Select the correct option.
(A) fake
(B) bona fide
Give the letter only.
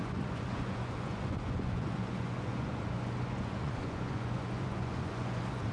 A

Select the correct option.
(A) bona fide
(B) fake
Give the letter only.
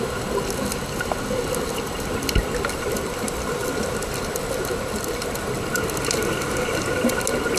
A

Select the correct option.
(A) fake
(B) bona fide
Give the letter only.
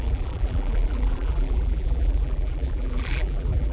A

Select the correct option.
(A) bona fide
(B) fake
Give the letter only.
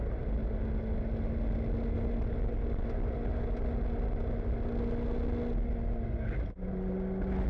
A